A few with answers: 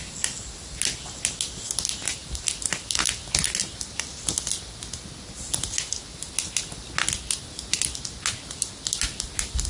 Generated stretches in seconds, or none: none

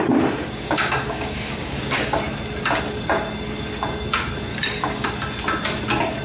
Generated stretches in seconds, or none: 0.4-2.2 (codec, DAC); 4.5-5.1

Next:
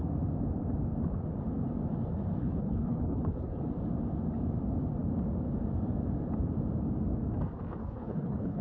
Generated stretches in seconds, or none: 2.4-3.7 (codec, HILCodec); 7.8-8.6